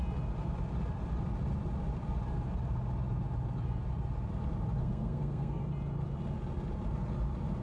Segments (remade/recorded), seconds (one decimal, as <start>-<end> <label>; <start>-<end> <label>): 0.0-4.8 recorded; 4.8-5.6 remade; 5.6-7.6 recorded